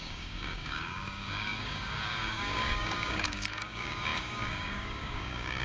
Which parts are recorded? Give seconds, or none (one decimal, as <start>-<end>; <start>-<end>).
none